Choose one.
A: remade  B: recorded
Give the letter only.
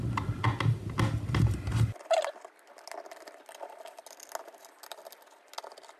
B